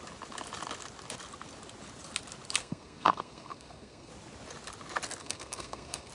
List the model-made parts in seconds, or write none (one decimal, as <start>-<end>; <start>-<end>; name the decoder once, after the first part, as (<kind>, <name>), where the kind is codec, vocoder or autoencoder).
2.6-4.1 (codec, SNAC); 5.2-6.1